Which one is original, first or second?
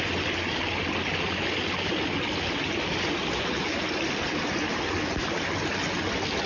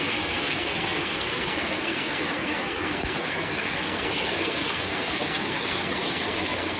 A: first